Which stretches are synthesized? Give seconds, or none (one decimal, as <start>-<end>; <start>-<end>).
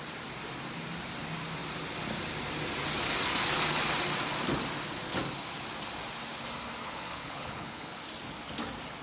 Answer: 6.8-8.0